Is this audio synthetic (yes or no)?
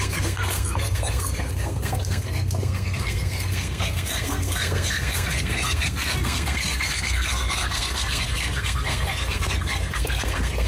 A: yes